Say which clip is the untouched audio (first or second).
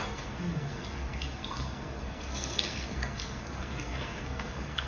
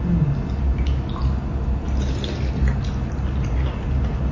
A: second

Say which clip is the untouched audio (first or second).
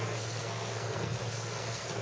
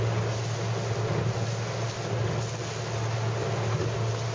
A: second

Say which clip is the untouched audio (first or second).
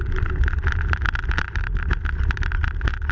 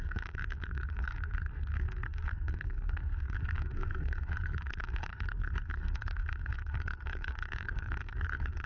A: first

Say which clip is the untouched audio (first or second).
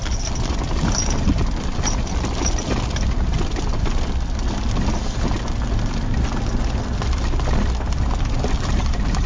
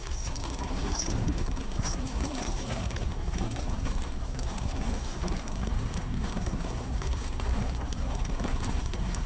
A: first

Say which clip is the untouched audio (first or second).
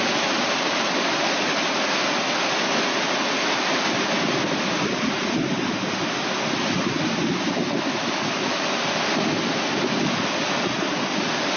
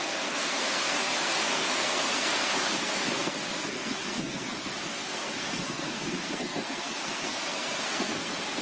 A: first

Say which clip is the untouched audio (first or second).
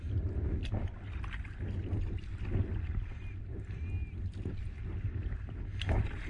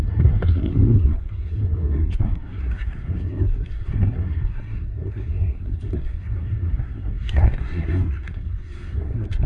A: first